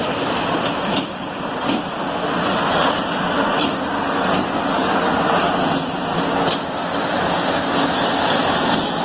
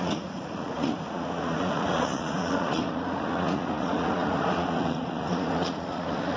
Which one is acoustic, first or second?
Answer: first